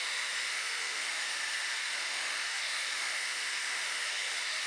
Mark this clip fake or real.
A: fake